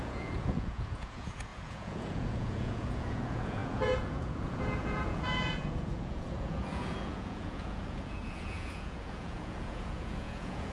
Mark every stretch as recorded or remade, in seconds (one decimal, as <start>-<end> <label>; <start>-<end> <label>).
0.0-10.7 remade